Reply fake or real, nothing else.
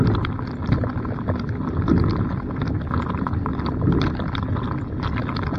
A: real